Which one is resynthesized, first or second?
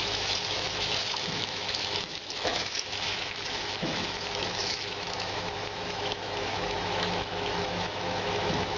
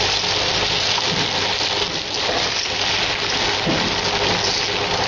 first